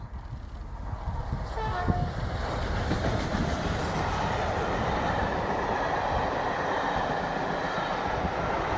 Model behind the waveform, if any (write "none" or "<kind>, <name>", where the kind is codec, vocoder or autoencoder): none